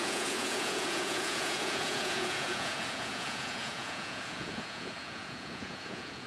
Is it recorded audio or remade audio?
remade